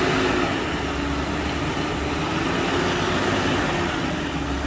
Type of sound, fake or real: real